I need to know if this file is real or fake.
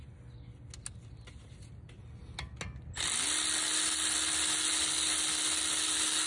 real